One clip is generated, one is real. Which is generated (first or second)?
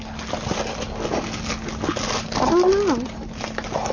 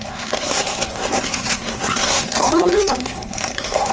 second